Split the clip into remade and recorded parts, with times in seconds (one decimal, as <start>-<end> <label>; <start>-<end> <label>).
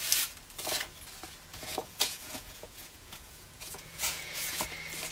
0.0-1.5 recorded; 1.5-4.6 remade; 4.6-5.1 recorded